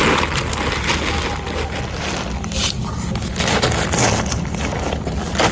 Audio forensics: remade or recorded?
recorded